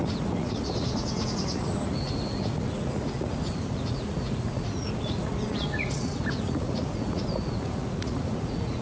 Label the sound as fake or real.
fake